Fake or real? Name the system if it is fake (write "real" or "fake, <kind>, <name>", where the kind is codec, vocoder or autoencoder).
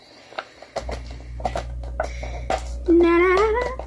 real